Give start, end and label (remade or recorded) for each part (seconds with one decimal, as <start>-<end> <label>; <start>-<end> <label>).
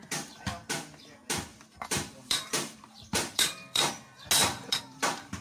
0.0-1.5 recorded; 1.5-3.9 remade; 3.9-4.4 recorded; 4.4-5.4 remade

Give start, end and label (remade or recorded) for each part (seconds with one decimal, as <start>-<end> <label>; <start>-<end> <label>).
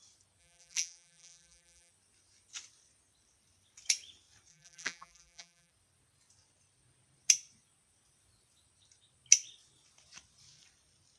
0.0-0.4 recorded; 0.4-1.9 remade; 1.9-4.5 recorded; 4.5-5.7 remade; 5.7-11.2 recorded